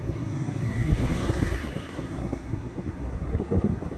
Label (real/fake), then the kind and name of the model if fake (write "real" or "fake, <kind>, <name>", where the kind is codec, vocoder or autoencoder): fake, codec, SNAC